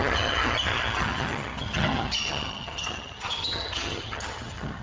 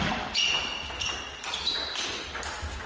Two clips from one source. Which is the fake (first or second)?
first